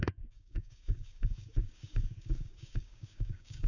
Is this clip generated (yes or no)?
yes